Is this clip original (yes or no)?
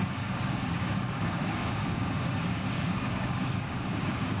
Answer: no